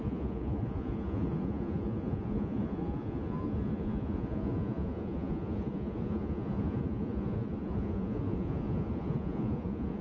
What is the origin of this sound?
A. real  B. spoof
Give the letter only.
B